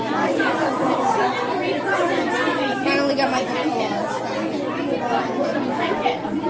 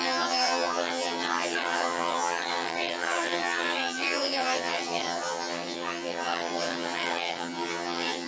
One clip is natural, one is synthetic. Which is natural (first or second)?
first